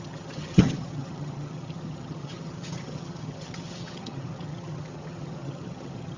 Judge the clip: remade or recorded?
remade